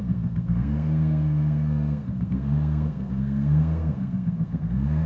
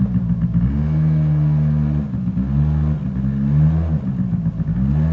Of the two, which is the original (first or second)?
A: second